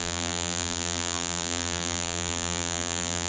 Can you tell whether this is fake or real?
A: fake